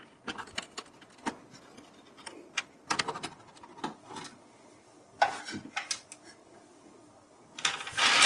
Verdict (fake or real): real